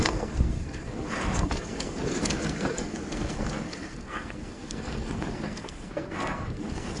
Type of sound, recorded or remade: remade